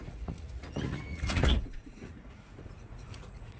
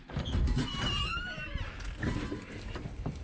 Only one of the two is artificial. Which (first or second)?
first